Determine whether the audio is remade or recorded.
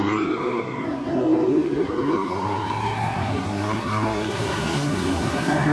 remade